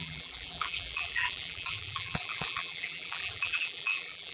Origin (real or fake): fake